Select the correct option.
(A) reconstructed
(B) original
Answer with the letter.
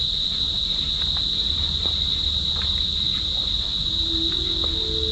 B